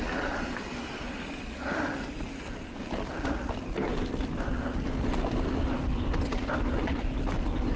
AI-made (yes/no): no